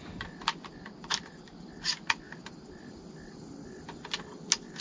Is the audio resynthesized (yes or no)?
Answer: no